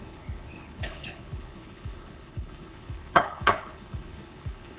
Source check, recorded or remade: remade